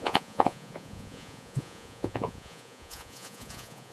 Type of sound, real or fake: fake